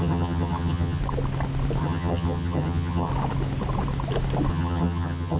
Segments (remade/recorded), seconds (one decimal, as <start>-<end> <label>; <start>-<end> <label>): 0.0-1.0 remade; 1.0-1.8 recorded; 1.8-3.1 remade; 3.1-4.5 recorded; 4.5-5.4 remade